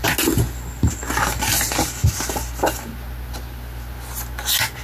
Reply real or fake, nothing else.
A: real